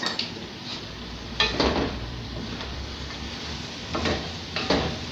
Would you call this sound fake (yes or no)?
yes